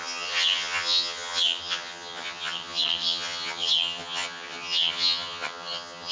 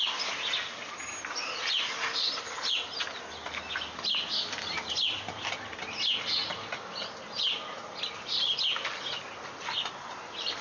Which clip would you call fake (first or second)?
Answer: first